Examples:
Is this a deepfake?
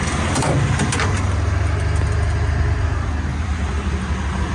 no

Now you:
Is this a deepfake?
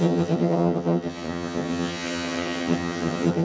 yes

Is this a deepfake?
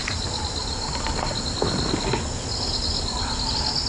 no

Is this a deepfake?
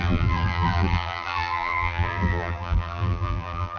yes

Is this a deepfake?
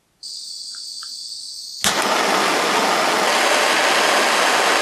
no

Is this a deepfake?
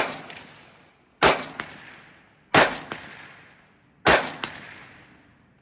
no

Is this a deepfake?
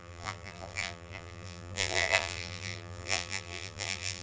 yes